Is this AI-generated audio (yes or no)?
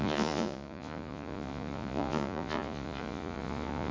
yes